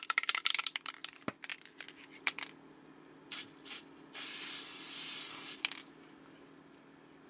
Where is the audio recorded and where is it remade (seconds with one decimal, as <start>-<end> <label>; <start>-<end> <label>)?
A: 0.0-7.3 recorded